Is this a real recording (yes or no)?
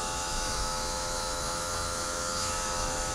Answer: no